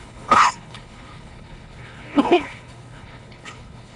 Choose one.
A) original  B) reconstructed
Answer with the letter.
B